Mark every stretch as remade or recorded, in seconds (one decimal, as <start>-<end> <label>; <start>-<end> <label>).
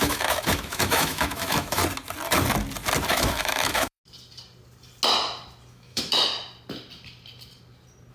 0.0-1.8 remade; 1.8-3.1 recorded; 3.1-4.0 remade; 4.0-5.7 recorded; 5.7-6.3 remade; 6.3-8.1 recorded